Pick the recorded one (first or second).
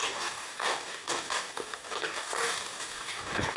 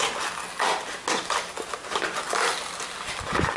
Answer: second